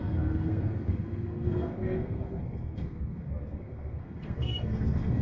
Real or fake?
fake